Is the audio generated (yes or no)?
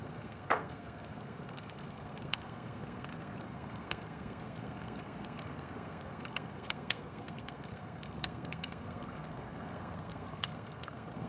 yes